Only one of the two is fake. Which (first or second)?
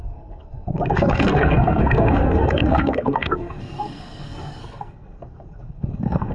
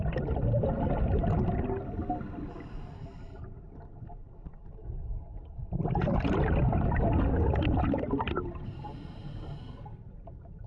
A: first